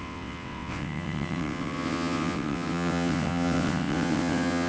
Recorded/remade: remade